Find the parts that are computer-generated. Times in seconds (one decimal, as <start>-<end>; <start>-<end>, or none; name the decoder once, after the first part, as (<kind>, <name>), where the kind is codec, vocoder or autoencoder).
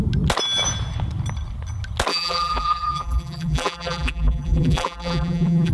2.1-5.7 (vocoder, BigVGAN v2)